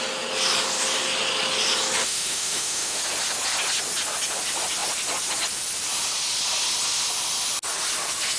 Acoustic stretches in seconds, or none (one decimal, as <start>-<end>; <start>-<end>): 0.0-2.0; 3.0-8.4